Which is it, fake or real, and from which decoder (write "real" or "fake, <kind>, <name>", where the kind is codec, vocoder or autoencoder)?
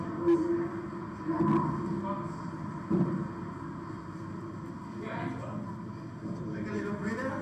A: real